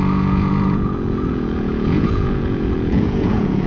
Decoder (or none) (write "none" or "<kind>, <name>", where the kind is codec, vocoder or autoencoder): vocoder, Vocos